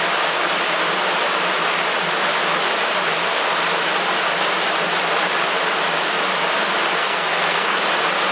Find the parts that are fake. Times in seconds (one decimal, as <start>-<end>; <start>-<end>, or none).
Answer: 7.0-7.8